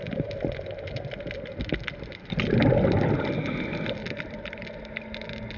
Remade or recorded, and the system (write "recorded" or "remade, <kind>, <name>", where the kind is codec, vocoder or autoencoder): recorded